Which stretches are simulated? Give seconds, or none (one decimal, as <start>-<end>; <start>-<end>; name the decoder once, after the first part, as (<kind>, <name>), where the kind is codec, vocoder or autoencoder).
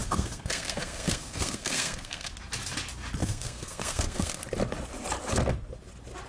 0.0-2.3 (codec, SNAC); 3.2-4.4